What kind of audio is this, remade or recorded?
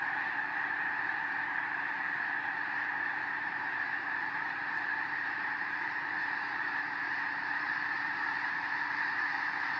remade